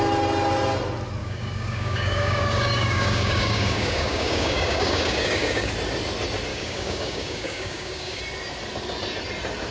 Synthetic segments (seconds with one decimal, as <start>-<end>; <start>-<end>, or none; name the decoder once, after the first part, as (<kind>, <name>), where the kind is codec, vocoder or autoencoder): 1.2-5.7 (codec, DAC); 6.5-8.2